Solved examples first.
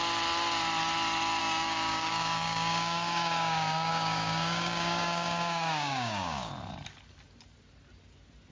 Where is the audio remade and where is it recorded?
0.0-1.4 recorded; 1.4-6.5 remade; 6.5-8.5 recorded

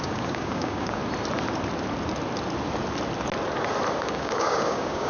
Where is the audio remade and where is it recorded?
0.0-1.0 remade; 1.0-4.0 recorded; 4.0-5.1 remade

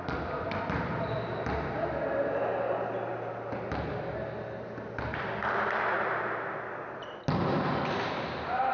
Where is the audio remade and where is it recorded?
0.0-8.7 recorded

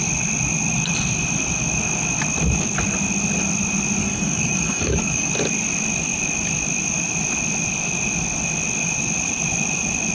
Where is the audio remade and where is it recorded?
0.0-4.0 recorded; 4.0-5.3 remade; 5.3-10.1 recorded

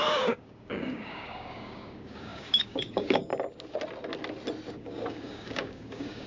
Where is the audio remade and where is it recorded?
0.0-3.3 remade; 3.3-4.7 recorded; 4.7-6.3 remade

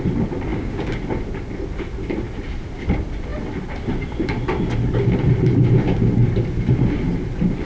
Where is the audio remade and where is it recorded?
0.0-0.5 recorded; 0.5-1.0 remade; 1.0-7.7 recorded

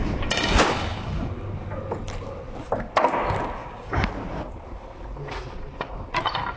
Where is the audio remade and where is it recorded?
0.0-3.6 recorded; 3.6-4.1 remade; 4.1-6.6 recorded

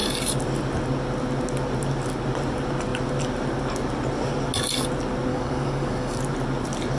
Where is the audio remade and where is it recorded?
0.0-5.3 recorded; 5.3-6.2 remade; 6.2-7.0 recorded